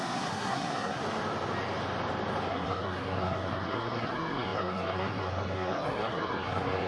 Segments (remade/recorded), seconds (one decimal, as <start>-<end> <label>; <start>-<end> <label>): 0.0-1.0 remade; 1.0-2.5 recorded; 2.5-6.9 remade